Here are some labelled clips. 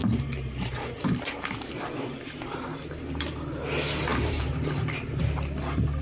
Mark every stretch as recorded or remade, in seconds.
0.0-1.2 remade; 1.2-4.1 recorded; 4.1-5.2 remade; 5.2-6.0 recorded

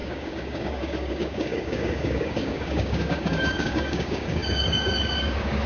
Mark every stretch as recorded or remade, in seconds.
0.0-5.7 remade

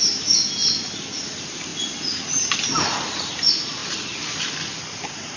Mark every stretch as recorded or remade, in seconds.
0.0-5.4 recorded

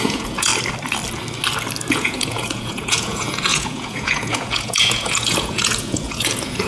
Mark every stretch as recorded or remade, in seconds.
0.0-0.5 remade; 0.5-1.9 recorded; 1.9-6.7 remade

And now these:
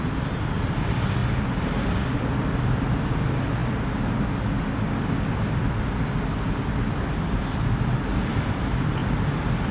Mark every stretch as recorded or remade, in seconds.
0.0-1.2 remade; 1.2-1.9 recorded; 1.9-3.6 remade; 3.6-6.6 recorded; 6.6-9.0 remade; 9.0-9.7 recorded

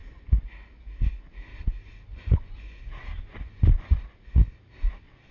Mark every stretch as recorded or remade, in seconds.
0.0-2.1 recorded; 2.1-2.8 remade; 2.8-3.3 recorded; 3.3-3.9 remade; 3.9-5.3 recorded

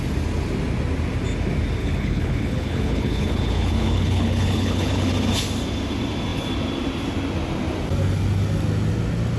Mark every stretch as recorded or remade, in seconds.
0.0-1.8 recorded; 1.8-5.1 remade; 5.1-9.4 recorded